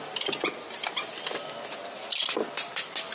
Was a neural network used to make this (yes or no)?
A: no